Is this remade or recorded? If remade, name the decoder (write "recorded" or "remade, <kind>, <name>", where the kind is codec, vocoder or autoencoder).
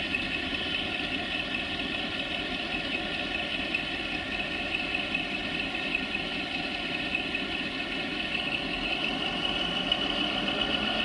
recorded